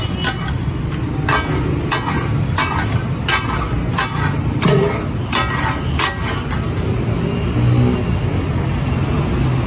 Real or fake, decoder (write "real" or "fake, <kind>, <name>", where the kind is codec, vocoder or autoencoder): real